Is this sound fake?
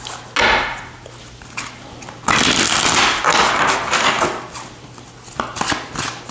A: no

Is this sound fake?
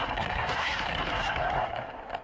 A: yes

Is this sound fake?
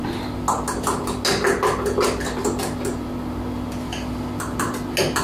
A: no